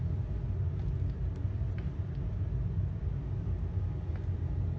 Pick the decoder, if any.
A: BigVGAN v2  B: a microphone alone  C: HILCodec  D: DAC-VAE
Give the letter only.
B